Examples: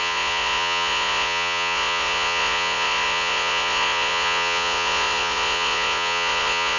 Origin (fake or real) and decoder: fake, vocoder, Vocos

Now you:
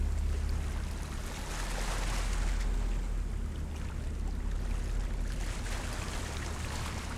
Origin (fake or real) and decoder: real